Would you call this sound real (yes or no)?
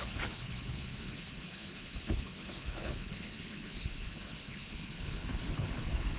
no